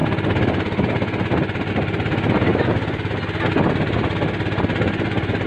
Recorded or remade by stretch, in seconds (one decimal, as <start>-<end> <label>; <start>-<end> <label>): 0.0-5.5 recorded

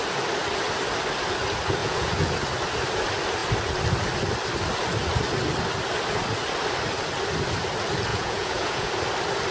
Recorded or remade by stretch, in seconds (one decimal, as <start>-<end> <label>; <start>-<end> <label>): 0.0-1.8 recorded; 1.8-2.3 remade; 2.3-8.1 recorded; 8.1-8.9 remade; 8.9-9.5 recorded

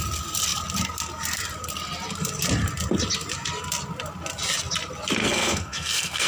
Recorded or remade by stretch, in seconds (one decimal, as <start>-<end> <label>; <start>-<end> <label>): 0.0-5.2 recorded; 5.2-6.3 remade

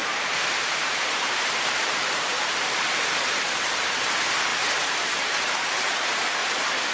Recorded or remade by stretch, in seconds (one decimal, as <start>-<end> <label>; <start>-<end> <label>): 0.0-4.5 remade; 4.5-5.2 recorded; 5.2-6.4 remade; 6.4-6.9 recorded

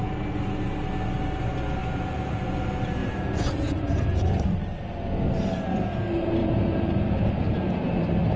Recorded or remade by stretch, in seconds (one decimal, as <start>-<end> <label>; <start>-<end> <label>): 0.0-1.8 recorded; 1.8-2.4 remade; 2.4-3.0 recorded; 3.0-4.4 remade; 4.4-6.4 recorded; 6.4-8.0 remade; 8.0-8.4 recorded